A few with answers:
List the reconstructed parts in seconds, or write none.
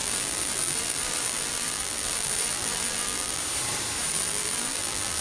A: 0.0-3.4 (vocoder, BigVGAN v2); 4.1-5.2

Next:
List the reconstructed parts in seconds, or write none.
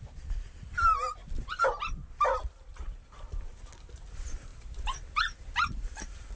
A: 2.7-3.3 (vocoder, BigVGAN v2); 4.5-6.4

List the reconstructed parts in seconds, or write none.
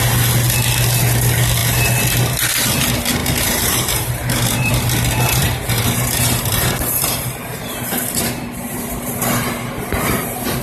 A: 3.2-4.7 (vocoder, BigVGAN v2); 5.4-10.6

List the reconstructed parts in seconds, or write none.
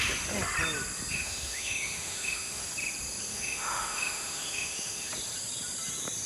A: 1.1-2.6 (autoencoder, DAC-VAE); 3.3-5.1